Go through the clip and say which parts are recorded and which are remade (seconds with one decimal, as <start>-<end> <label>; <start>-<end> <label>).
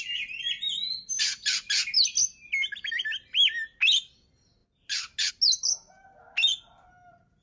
0.0-7.4 recorded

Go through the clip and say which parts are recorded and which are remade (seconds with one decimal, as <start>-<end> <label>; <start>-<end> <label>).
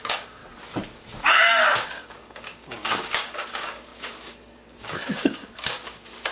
0.0-0.4 remade; 0.4-1.2 recorded; 1.2-6.3 remade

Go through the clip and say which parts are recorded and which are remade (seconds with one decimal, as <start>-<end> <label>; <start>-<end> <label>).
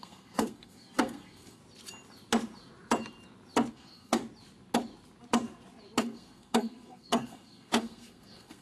0.0-1.6 remade; 1.6-3.7 recorded; 3.7-4.2 remade; 4.2-6.0 recorded; 6.0-8.6 remade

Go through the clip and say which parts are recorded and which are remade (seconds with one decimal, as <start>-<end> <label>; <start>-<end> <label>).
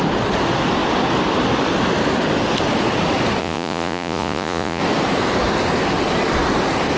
0.0-3.4 recorded; 3.4-4.8 remade; 4.8-7.0 recorded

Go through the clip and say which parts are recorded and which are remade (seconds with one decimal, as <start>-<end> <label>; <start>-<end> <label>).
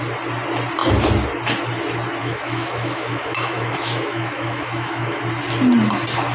0.0-2.2 recorded; 2.2-5.2 remade; 5.2-6.3 recorded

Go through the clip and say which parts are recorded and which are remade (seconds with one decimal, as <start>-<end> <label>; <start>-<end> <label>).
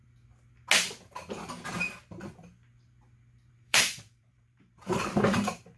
0.0-3.5 recorded; 3.5-5.8 remade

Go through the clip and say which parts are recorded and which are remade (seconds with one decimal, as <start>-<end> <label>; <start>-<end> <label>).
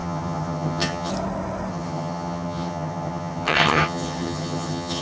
0.0-1.1 remade; 1.1-1.7 recorded; 1.7-5.0 remade